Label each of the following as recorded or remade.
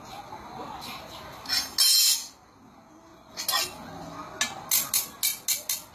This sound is recorded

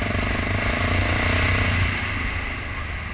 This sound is recorded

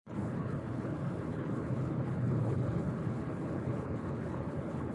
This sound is remade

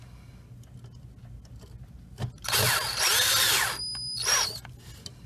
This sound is recorded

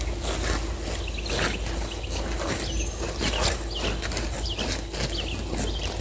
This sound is recorded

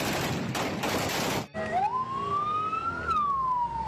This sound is recorded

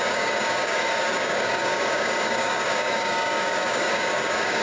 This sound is remade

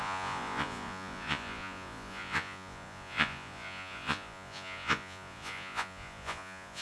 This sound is remade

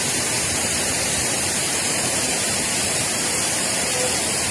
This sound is remade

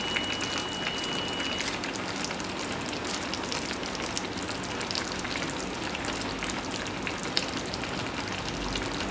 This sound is recorded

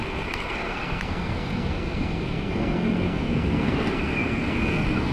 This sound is remade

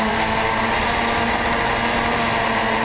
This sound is recorded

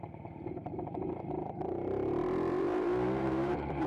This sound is remade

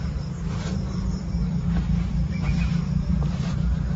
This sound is remade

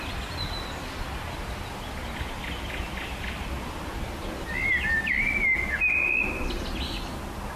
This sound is recorded